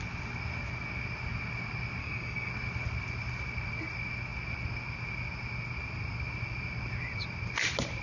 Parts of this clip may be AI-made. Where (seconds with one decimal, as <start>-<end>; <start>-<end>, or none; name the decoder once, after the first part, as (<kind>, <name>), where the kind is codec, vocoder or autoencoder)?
2.0-2.5 (codec, DAC)